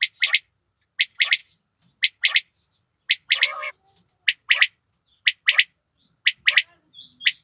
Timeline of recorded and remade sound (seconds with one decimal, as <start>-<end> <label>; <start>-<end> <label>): 0.0-7.4 recorded